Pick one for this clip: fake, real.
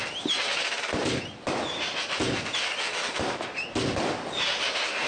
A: real